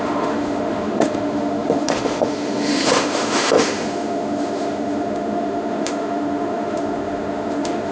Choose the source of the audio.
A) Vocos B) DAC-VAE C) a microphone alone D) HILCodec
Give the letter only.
B